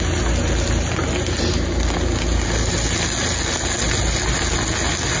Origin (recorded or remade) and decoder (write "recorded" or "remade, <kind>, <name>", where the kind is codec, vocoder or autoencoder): recorded